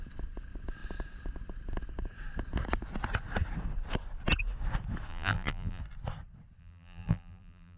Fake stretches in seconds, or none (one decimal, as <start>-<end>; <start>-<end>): 5.1-5.8; 6.6-7.8